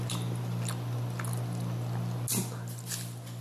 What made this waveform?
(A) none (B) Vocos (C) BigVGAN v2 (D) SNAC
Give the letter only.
A